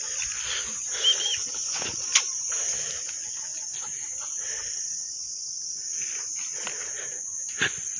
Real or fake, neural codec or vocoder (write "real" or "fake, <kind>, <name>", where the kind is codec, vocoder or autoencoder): real